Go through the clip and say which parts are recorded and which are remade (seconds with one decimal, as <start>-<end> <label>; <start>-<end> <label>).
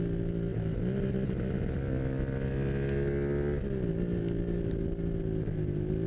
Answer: 0.0-6.1 recorded